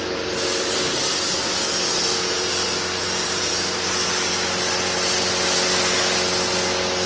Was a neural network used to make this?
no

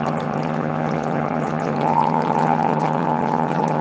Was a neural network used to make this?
yes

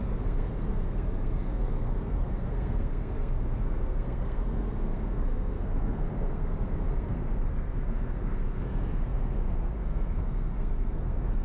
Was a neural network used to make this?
yes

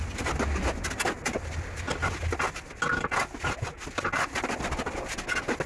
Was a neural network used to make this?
no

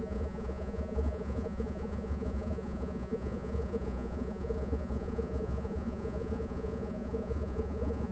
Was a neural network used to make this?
yes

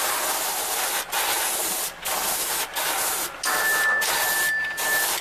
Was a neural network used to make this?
no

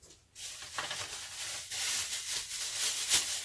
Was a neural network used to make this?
no